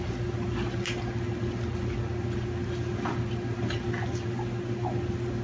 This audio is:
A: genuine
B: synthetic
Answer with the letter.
A